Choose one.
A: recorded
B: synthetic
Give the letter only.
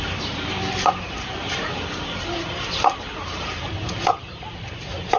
B